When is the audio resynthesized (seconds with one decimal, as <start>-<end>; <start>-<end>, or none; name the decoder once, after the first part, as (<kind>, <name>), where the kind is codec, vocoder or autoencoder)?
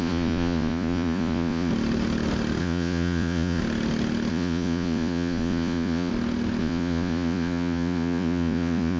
0.0-1.7 (vocoder, Vocos); 2.6-3.6; 4.3-6.1; 6.6-9.0